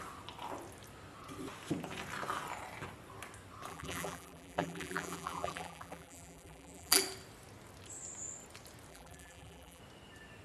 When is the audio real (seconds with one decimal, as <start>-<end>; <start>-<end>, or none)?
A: 0.0-3.7; 7.0-8.9; 9.8-10.4